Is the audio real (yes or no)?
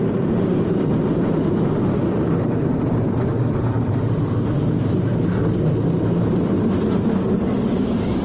no